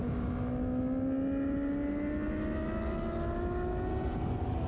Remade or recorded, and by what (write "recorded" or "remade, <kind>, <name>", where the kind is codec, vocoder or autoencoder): recorded